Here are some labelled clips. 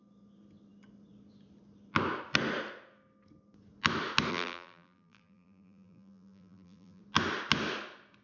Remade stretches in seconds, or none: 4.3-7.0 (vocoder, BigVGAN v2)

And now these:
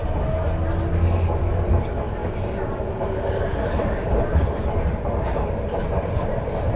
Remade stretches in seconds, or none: 2.2-6.3 (vocoder, BigVGAN v2)

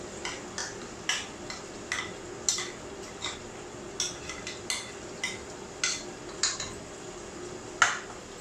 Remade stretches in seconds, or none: none

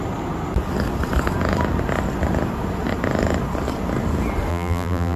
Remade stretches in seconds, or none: 4.5-5.2 (vocoder, BigVGAN v2)

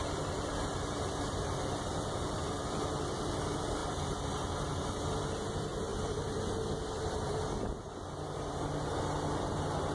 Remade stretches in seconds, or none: 3.8-4.3 (vocoder, BigVGAN v2)

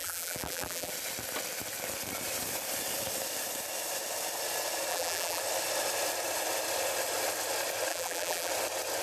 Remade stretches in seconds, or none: 0.0-0.9 (vocoder, BigVGAN v2); 4.9-5.4; 7.9-8.5

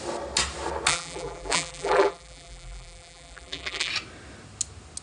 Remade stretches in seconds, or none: 0.9-3.9 (vocoder, BigVGAN v2)

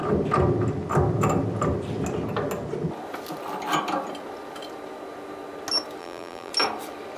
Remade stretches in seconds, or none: 6.0-6.5 (vocoder, BigVGAN v2)